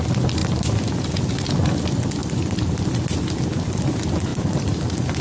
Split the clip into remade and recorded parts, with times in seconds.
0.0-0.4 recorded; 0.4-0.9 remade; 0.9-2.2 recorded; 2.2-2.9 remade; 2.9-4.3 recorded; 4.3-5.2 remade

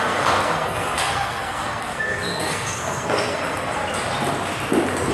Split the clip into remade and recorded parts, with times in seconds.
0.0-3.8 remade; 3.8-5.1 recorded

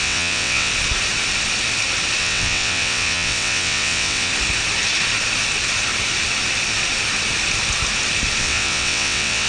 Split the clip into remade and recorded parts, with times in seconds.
0.0-0.7 remade; 0.7-2.2 recorded; 2.2-4.3 remade; 4.3-8.4 recorded; 8.4-9.5 remade